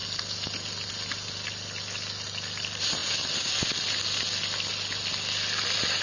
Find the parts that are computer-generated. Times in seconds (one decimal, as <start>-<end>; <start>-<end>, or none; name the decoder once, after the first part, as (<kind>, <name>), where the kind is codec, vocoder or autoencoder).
none